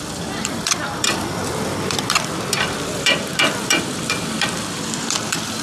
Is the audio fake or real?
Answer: fake